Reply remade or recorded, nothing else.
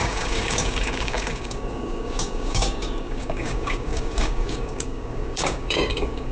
remade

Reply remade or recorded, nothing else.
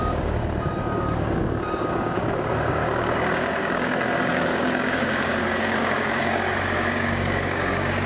remade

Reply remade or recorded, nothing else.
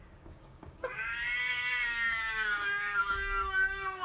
remade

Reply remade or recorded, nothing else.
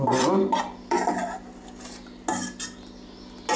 recorded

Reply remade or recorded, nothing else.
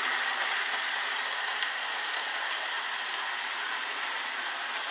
recorded